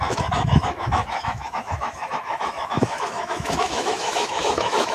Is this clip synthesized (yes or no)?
yes